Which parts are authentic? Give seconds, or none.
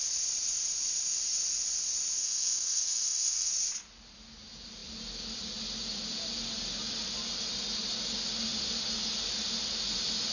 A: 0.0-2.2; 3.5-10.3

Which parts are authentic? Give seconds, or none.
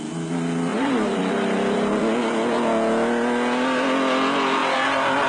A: 0.0-0.7; 2.0-5.3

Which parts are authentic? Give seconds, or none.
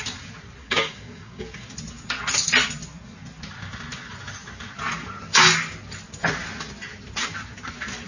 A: 0.0-0.6; 1.7-8.1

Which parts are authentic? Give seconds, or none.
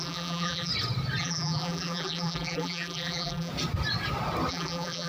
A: 0.7-1.2; 3.5-4.5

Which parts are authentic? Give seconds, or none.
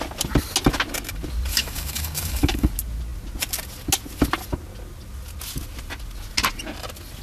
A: 0.0-1.5; 2.7-7.2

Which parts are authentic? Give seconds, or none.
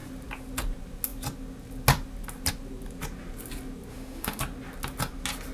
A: 0.0-3.9; 4.4-5.5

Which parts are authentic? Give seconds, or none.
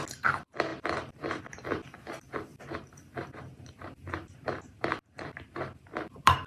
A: 0.0-0.7; 1.4-2.5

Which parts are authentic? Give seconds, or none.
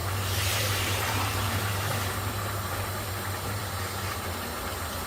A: none